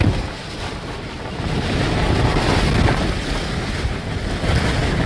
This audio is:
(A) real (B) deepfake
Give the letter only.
A